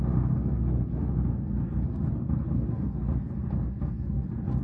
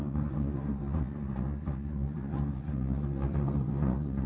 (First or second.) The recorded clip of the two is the first